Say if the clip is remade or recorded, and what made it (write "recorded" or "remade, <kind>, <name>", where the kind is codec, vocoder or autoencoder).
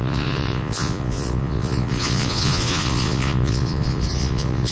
remade, vocoder, Vocos